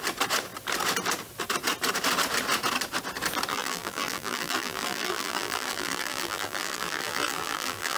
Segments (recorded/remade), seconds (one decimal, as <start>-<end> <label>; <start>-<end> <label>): 0.0-3.5 recorded; 3.5-8.0 remade